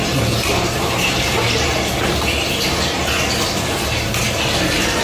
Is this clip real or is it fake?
real